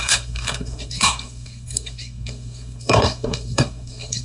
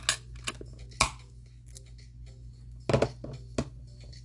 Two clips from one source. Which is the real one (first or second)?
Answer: second